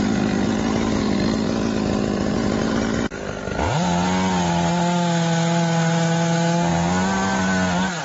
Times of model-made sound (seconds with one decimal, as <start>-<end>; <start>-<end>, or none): none

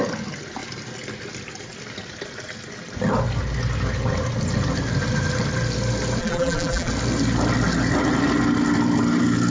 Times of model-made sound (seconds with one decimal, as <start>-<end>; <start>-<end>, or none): 6.2-6.9

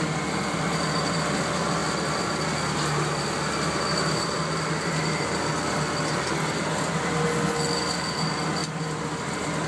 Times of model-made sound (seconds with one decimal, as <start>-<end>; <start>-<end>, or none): none

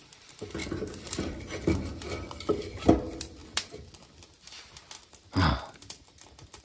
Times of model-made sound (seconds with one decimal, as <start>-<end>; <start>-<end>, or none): 0.6-1.4

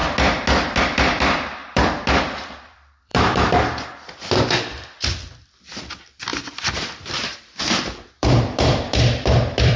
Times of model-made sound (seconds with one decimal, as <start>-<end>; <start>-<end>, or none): 0.8-9.8